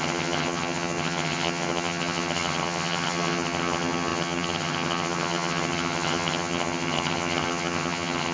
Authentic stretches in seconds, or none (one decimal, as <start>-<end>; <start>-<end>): none